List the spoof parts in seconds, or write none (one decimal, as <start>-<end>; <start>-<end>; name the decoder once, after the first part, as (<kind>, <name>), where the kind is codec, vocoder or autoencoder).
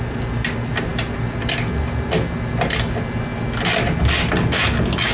none